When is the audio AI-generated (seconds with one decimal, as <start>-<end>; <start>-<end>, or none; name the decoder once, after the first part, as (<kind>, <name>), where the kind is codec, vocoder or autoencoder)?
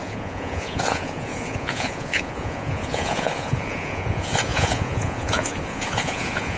0.0-6.6 (vocoder, Vocos)